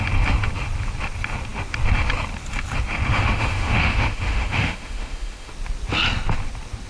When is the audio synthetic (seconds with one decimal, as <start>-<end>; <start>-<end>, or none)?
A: 3.1-5.5